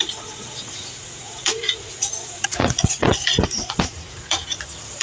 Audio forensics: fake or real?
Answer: fake